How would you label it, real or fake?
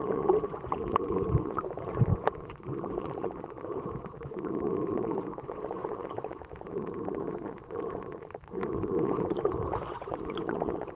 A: fake